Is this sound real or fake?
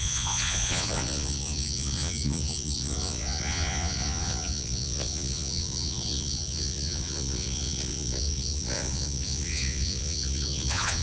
fake